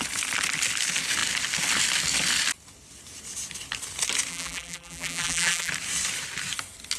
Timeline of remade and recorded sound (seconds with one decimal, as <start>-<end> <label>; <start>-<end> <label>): 0.0-4.3 recorded; 4.3-5.7 remade; 5.7-7.0 recorded